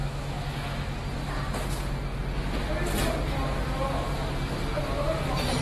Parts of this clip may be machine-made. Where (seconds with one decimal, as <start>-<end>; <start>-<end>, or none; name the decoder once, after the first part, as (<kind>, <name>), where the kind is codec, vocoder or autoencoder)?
0.0-1.0 (autoencoder, DAC-VAE)